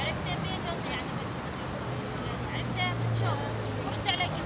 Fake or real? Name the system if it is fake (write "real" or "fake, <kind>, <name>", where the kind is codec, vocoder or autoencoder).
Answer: real